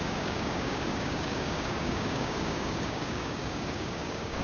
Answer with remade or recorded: remade